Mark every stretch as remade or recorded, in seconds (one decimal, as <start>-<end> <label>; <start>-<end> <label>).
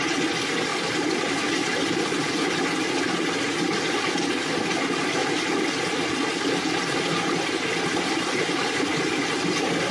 0.0-9.9 recorded